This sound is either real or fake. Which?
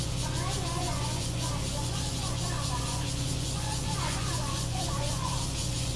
fake